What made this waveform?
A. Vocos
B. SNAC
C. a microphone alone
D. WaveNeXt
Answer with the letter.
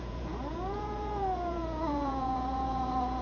A